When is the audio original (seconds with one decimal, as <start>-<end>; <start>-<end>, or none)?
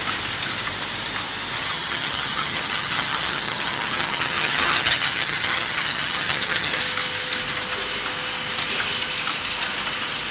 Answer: 0.0-1.6; 6.8-10.3